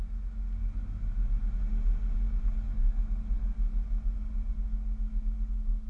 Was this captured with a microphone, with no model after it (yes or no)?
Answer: yes